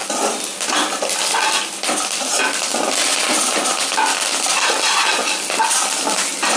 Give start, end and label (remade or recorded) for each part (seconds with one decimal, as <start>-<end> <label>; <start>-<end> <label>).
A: 0.0-6.6 recorded

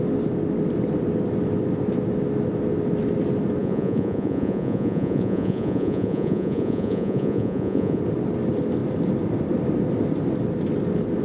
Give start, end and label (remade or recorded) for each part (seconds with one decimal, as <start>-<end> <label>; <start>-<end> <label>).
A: 0.0-3.6 recorded; 3.6-8.0 remade; 8.0-11.2 recorded

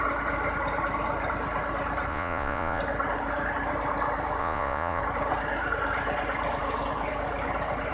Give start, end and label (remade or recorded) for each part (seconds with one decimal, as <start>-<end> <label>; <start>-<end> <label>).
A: 0.0-2.1 recorded; 2.1-2.8 remade; 2.8-4.4 recorded; 4.4-5.0 remade; 5.0-7.9 recorded

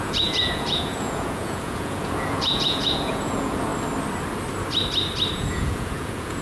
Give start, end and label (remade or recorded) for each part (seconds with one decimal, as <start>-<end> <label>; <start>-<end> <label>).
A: 0.0-3.7 remade; 3.7-5.3 recorded; 5.3-6.4 remade

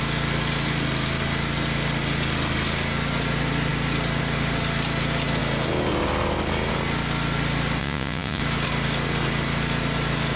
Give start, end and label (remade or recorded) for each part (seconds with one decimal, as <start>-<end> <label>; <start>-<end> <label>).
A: 0.0-7.8 recorded; 7.8-8.4 remade; 8.4-10.4 recorded

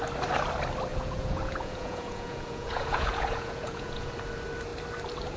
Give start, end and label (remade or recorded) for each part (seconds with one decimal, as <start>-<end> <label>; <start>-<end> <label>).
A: 0.0-0.9 recorded; 0.9-4.1 remade; 4.1-5.4 recorded

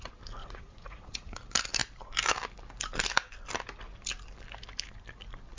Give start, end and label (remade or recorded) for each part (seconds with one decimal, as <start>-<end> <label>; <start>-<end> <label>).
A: 0.0-0.4 recorded; 0.4-1.4 remade; 1.4-5.6 recorded

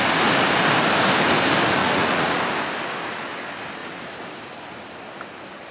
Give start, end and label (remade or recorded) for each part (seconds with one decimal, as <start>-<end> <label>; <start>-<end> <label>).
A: 0.0-1.8 recorded; 1.8-2.4 remade; 2.4-5.7 recorded